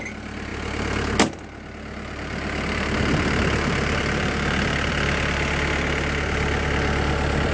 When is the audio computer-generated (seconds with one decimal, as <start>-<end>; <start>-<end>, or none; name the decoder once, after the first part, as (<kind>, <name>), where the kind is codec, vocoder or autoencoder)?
none